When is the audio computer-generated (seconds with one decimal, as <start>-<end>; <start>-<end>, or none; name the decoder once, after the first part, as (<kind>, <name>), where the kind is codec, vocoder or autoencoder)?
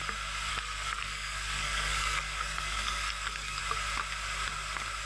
0.5-3.6 (codec, SNAC)